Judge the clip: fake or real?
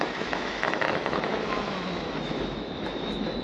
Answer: fake